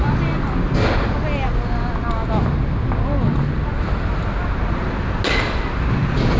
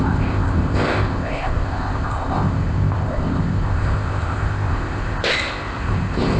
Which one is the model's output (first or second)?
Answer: second